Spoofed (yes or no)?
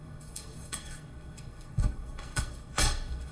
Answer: yes